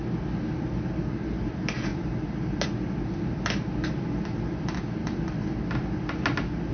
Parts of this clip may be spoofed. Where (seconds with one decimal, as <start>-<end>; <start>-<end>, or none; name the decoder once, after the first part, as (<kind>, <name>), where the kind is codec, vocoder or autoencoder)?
none

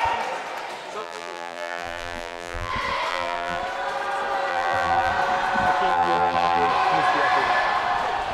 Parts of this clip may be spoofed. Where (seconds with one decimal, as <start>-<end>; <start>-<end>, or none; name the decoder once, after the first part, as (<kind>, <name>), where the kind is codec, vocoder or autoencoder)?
1.0-2.7 (vocoder, BigVGAN v2); 3.1-3.6; 4.5-5.1; 5.9-6.7

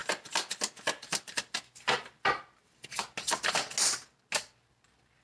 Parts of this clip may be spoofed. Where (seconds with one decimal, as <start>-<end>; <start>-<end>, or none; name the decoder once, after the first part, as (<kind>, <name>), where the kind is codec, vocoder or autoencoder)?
none

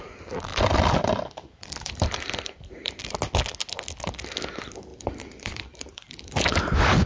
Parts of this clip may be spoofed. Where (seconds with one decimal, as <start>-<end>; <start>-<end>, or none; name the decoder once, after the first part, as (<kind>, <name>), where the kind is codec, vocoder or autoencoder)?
0.5-3.0 (vocoder, BigVGAN v2); 4.9-7.1

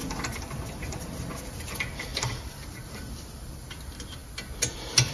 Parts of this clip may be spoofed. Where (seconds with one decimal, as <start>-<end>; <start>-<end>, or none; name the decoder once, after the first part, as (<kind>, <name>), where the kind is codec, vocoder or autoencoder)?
0.0-1.4 (vocoder, BigVGAN v2); 2.1-3.8

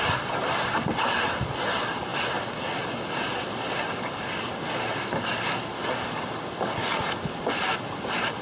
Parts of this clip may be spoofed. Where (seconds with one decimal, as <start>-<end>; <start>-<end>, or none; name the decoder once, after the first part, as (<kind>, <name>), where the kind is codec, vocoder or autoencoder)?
none

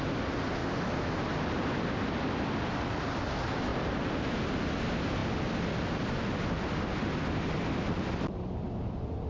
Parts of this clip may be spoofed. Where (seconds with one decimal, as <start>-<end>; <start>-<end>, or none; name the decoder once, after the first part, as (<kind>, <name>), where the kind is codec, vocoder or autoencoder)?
3.7-4.3 (vocoder, BigVGAN v2)

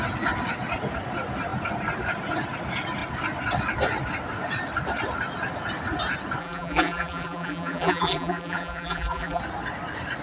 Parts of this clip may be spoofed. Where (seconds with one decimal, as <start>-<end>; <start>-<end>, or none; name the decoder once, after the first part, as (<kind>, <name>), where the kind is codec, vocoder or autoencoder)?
6.4-9.4 (vocoder, BigVGAN v2)